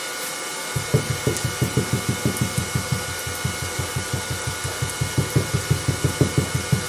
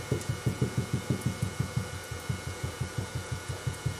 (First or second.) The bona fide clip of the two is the first